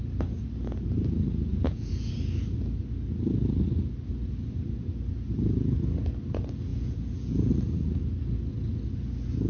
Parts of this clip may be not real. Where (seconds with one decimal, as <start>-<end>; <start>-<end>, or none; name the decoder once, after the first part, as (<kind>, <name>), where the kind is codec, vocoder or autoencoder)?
1.5-2.1 (vocoder, Vocos); 6.7-7.5